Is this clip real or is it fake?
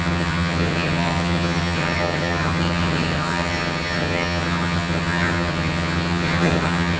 fake